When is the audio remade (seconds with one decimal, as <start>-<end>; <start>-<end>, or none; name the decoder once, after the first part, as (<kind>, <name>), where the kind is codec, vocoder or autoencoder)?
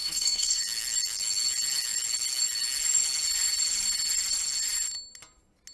0.0-0.6 (codec, SNAC)